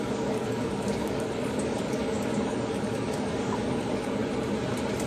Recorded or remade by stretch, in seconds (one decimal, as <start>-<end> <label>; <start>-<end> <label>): 0.0-4.2 remade; 4.2-5.1 recorded